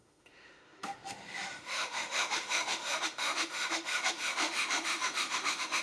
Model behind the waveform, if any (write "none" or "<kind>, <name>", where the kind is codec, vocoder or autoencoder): autoencoder, DAC-VAE